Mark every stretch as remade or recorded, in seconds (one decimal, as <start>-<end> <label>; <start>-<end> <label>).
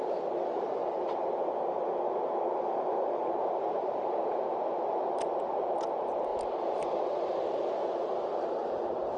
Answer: 0.0-0.8 remade; 0.8-3.4 recorded; 3.4-6.3 remade; 6.3-8.5 recorded; 8.5-9.2 remade